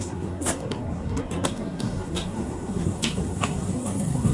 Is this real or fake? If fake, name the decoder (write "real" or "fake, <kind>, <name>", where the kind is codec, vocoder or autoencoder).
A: fake, codec, SNAC